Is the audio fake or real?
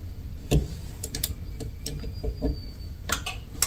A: real